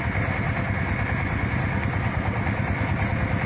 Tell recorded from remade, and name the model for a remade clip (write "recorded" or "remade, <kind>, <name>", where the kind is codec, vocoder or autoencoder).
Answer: recorded